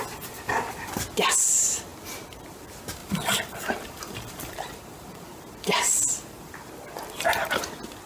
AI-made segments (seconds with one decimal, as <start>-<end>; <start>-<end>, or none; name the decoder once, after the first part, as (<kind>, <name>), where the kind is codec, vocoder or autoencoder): 3.0-6.6 (vocoder, BigVGAN v2)